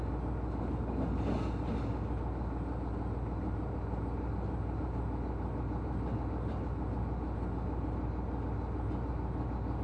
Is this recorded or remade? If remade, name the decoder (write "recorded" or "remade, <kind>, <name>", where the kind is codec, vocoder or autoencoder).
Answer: recorded